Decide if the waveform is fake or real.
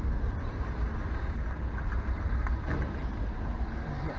real